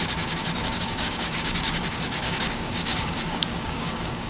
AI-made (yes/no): yes